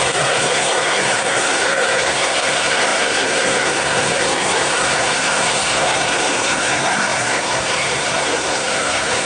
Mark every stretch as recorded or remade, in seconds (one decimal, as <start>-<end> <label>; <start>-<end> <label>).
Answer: 0.0-9.3 remade